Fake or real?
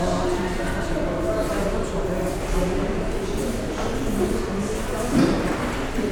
real